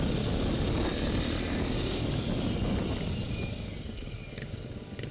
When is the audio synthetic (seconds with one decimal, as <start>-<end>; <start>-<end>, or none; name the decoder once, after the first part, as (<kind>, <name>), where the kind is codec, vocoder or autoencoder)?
none